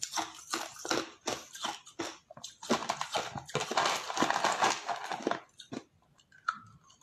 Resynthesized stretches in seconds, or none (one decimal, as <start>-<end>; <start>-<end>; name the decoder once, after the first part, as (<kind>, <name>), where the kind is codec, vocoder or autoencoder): 0.0-2.8 (vocoder, BigVGAN v2); 6.5-7.0